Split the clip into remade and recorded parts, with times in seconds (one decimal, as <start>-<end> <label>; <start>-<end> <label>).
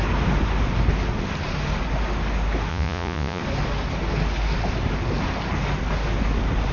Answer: 0.0-2.7 recorded; 2.7-3.4 remade; 3.4-6.7 recorded